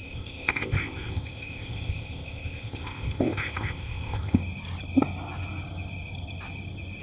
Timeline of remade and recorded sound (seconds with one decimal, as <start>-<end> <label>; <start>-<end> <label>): 0.0-4.4 remade; 4.4-7.0 recorded